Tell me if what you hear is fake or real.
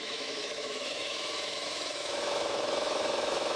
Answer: fake